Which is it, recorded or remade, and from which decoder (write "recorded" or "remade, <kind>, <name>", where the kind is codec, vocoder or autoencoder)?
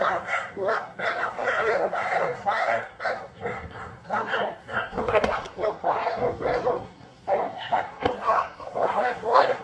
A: remade, codec, SNAC